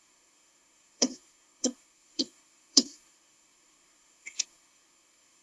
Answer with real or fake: fake